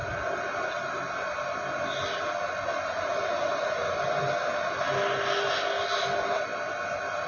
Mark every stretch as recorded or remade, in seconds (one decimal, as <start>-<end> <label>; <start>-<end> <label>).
0.0-7.3 recorded